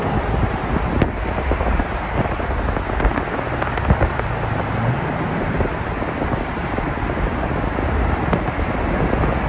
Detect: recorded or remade recorded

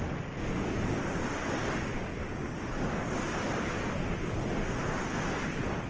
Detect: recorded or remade recorded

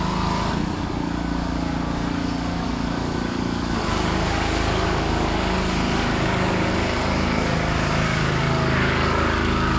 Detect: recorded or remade remade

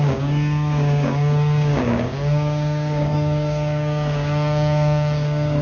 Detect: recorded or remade remade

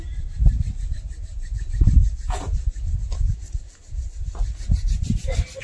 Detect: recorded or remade recorded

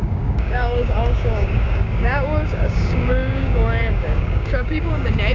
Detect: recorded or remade remade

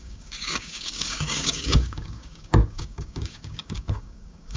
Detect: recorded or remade remade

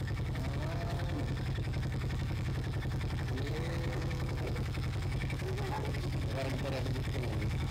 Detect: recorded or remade remade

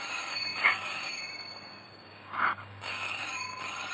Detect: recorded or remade remade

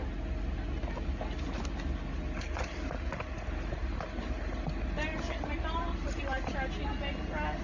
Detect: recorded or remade recorded